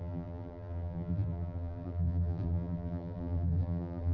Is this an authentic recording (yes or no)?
no